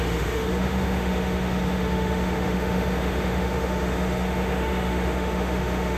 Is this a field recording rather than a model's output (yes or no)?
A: no